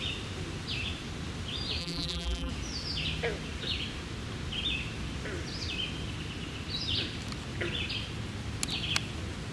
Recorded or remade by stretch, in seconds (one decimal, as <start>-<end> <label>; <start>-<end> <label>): 0.0-1.8 recorded; 1.8-2.5 remade; 2.5-9.5 recorded